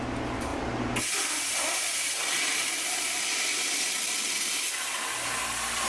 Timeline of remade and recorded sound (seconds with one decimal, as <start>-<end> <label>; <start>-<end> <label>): 0.0-5.9 recorded